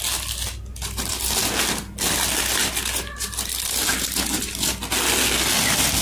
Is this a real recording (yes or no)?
yes